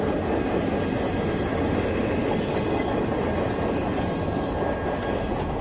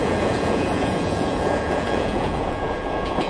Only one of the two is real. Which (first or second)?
first